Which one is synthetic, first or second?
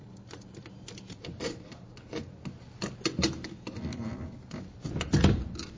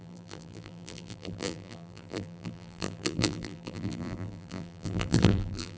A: second